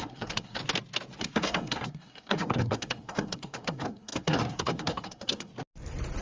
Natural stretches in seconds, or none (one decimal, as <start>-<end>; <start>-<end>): 0.6-1.2; 5.5-6.2